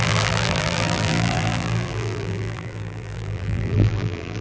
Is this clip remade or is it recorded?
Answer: remade